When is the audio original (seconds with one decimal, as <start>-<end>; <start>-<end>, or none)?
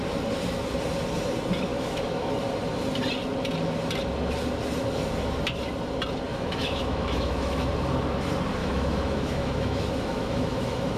0.0-1.7; 2.3-6.3; 7.7-8.6